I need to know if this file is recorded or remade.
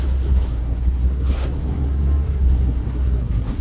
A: remade